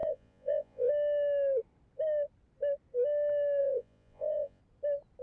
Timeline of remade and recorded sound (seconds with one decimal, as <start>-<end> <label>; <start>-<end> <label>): 0.0-0.9 remade; 0.9-3.6 recorded; 3.6-4.6 remade; 4.6-5.2 recorded